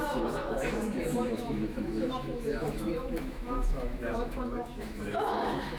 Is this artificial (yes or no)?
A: yes